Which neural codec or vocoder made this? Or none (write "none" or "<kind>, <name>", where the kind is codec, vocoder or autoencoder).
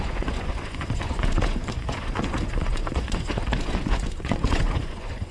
vocoder, Vocos